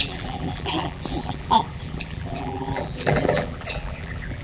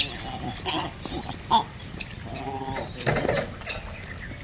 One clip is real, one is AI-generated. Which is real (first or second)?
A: second